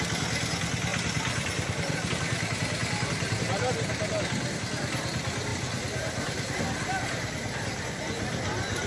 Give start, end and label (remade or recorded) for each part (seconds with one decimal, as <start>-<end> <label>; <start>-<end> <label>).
0.0-0.9 recorded; 0.9-2.1 remade; 2.1-2.8 recorded; 2.8-3.5 remade; 3.5-5.5 recorded; 5.5-8.0 remade; 8.0-8.9 recorded

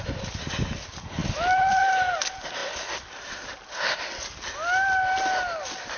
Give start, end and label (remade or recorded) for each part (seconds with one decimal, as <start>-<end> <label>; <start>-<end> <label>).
0.0-1.2 recorded; 1.2-1.8 remade; 1.8-6.0 recorded

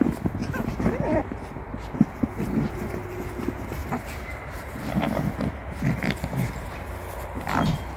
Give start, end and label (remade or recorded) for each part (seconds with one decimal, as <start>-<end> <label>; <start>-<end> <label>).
0.0-0.4 recorded; 0.4-1.6 remade; 1.6-3.8 recorded; 3.8-5.3 remade; 5.3-8.0 recorded

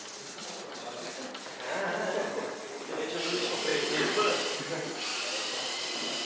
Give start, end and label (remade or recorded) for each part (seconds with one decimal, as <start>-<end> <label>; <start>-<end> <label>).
0.0-5.1 recorded; 5.1-6.2 remade

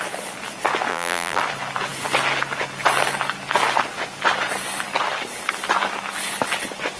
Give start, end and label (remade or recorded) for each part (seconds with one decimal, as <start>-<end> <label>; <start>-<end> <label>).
0.0-0.9 recorded; 0.9-1.4 remade; 1.4-7.0 recorded

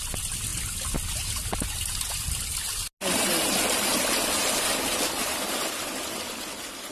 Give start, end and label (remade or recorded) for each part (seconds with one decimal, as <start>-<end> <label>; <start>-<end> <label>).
0.0-6.9 recorded

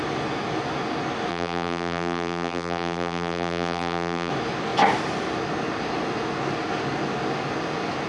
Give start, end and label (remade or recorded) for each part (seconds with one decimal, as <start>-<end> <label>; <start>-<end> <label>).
0.0-1.3 recorded; 1.3-4.3 remade; 4.3-8.1 recorded

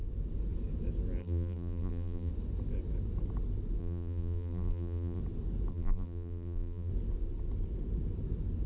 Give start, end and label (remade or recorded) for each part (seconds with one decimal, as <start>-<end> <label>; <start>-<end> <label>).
0.0-1.2 recorded; 1.2-2.3 remade; 2.3-3.8 recorded; 3.8-5.2 remade; 5.2-5.7 recorded; 5.7-6.9 remade; 6.9-8.7 recorded